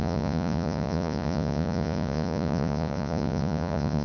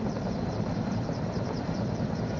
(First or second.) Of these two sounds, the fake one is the first